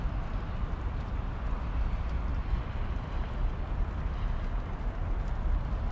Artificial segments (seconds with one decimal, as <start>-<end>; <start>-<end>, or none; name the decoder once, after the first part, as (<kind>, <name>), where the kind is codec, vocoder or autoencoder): 2.3-5.9 (vocoder, BigVGAN v2)